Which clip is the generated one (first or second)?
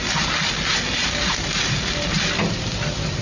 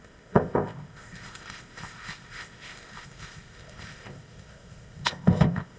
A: second